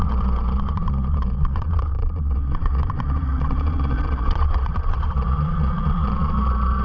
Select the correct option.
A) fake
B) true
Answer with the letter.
A